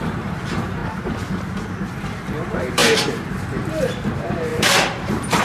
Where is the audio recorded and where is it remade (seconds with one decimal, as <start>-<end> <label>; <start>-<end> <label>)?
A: 0.0-0.8 remade; 0.8-2.0 recorded; 2.0-5.4 remade